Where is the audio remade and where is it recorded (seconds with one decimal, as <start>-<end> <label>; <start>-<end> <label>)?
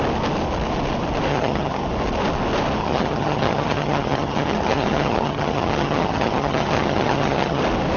0.0-1.3 recorded; 1.3-1.8 remade; 1.8-2.8 recorded; 2.8-7.6 remade; 7.6-8.0 recorded